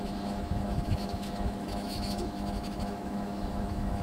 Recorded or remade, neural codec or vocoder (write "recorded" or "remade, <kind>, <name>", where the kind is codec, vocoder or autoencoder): remade, autoencoder, DAC-VAE